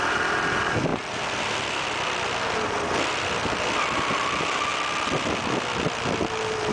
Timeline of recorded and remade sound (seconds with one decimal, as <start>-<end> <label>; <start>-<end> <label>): 0.0-6.7 recorded